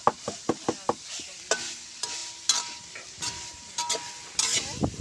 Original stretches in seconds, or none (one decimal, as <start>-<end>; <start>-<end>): 0.0-5.0